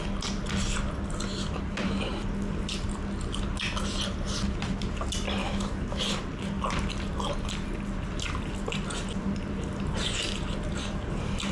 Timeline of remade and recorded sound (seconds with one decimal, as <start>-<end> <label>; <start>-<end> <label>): 0.0-5.4 recorded; 5.4-6.0 remade; 6.0-11.5 recorded